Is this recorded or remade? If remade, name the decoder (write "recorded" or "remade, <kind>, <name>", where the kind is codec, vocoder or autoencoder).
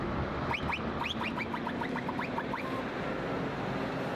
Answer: recorded